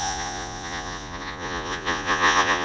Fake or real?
fake